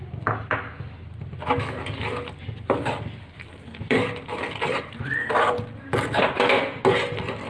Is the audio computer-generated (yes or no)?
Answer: no